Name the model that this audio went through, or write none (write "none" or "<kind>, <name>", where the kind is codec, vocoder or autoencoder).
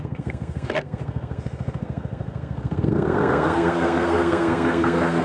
codec, SNAC